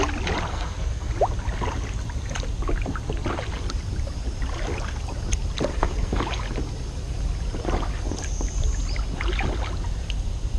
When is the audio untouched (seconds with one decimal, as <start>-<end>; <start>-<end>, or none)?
0.0-0.5; 1.1-5.7; 6.2-10.6